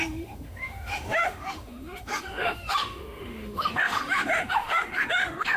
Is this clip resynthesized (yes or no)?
yes